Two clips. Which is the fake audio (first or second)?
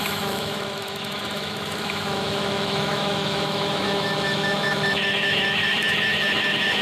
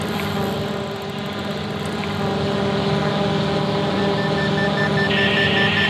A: first